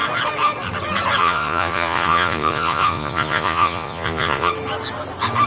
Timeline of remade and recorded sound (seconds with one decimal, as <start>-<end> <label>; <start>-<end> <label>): 0.0-1.2 recorded; 1.2-4.5 remade; 4.5-5.5 recorded